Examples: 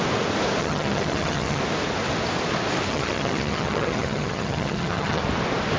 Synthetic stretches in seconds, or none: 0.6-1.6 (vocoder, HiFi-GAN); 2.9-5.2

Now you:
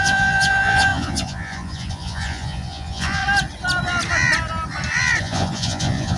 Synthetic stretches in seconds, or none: 0.0-3.2 (vocoder, Vocos); 5.2-6.2

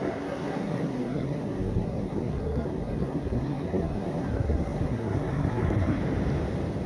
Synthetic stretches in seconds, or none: 0.0-6.0 (codec, SNAC)

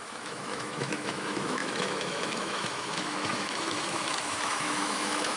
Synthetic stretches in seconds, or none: 0.0-5.4 (autoencoder, DAC-VAE)

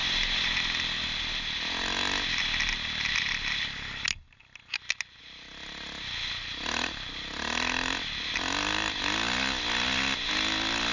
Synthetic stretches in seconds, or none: none

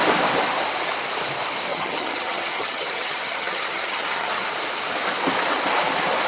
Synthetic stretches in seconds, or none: 1.7-4.3 (vocoder, HiFi-GAN)

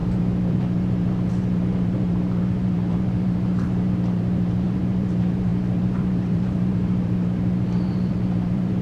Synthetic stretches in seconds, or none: 0.0-8.8 (vocoder, BigVGAN v2)